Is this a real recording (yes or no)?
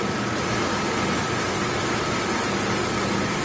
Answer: yes